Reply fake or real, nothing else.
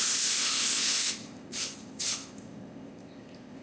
fake